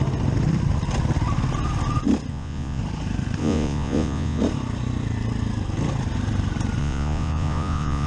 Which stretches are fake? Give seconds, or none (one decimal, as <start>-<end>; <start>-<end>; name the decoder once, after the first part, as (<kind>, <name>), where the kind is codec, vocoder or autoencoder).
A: 2.3-2.8 (vocoder, Vocos); 3.4-4.4; 6.8-8.1